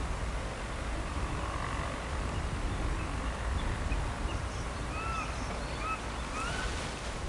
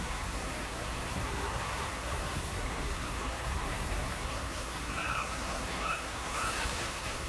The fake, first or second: second